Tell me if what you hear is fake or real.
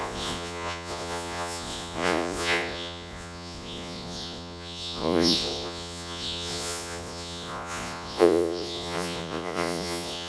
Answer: fake